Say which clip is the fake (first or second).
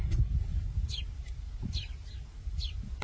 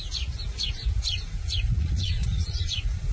second